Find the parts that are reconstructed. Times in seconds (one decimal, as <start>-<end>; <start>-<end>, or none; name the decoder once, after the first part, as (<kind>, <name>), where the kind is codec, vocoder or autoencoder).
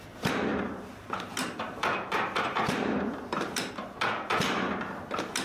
0.5-3.7 (vocoder, BigVGAN v2)